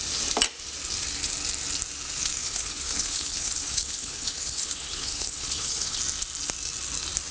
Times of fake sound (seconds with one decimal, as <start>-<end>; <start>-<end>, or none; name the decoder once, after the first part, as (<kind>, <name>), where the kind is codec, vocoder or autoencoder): 2.4-6.0 (codec, HILCodec)

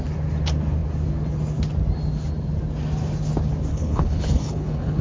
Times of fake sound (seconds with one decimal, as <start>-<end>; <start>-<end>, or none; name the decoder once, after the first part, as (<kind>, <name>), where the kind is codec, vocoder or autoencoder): 3.7-5.0 (codec, HILCodec)

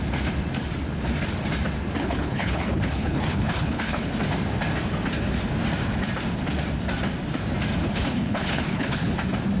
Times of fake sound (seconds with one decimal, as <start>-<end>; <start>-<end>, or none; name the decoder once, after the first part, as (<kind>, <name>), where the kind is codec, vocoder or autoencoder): 2.0-4.1 (codec, HILCodec); 7.8-9.1

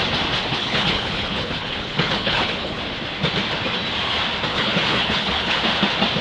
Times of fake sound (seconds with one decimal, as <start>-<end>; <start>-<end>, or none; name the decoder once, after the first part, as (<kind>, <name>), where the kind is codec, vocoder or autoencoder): 0.5-2.8 (codec, HILCodec); 4.5-5.6

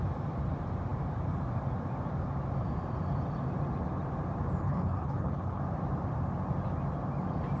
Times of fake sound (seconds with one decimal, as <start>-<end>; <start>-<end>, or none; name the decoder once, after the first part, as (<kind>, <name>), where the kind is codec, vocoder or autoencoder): 4.6-5.6 (codec, HILCodec)

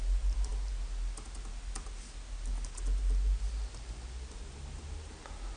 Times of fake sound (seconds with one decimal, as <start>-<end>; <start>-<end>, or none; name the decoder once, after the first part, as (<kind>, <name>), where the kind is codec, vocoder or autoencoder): none

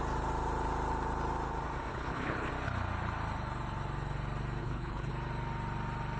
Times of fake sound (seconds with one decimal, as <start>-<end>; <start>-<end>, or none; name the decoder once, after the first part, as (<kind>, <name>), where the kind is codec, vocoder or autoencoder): 1.9-2.5 (codec, HILCodec); 4.6-5.1